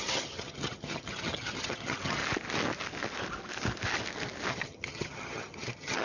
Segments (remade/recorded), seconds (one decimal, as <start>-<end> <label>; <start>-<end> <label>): 0.0-2.2 remade; 2.2-4.5 recorded; 4.5-6.0 remade

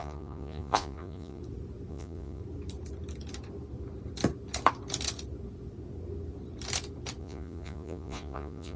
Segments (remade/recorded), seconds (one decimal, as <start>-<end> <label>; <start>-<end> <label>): 0.0-1.4 remade; 1.4-1.9 recorded; 1.9-2.4 remade; 2.4-7.2 recorded; 7.2-8.8 remade

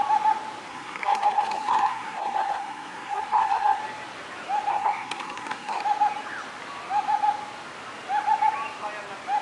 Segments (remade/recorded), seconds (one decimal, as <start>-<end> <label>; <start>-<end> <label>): 0.0-0.7 recorded; 0.7-3.8 remade; 3.8-4.7 recorded; 4.7-5.8 remade; 5.8-9.4 recorded

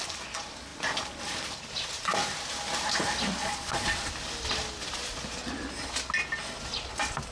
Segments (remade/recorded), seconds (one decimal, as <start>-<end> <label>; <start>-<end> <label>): 0.0-3.4 recorded; 3.4-4.1 remade; 4.1-7.3 recorded

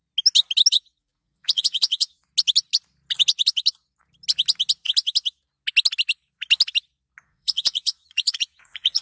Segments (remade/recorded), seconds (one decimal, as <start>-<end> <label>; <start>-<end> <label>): 0.0-0.7 recorded; 0.7-2.2 remade; 2.2-7.2 recorded; 7.2-9.0 remade

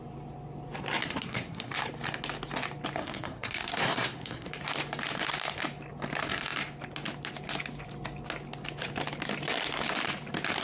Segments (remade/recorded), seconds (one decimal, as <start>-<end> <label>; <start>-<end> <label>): 0.0-1.0 recorded; 1.0-1.7 remade; 1.7-3.0 recorded; 3.0-4.5 remade; 4.5-10.6 recorded